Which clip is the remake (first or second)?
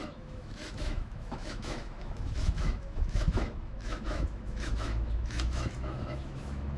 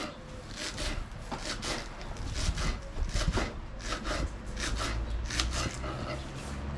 first